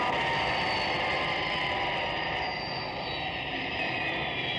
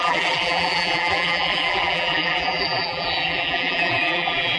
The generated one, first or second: second